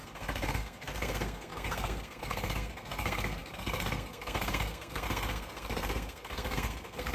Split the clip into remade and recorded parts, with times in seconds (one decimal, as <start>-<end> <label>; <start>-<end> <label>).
0.0-7.1 remade